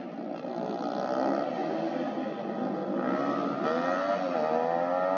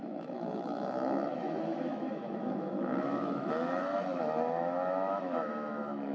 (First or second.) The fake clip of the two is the second